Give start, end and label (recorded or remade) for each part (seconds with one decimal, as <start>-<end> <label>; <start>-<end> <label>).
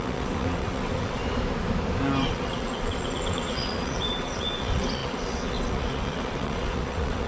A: 0.0-1.2 remade; 1.2-2.2 recorded; 2.2-7.3 remade